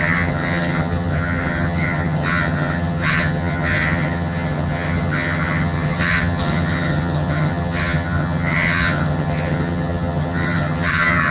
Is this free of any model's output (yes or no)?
no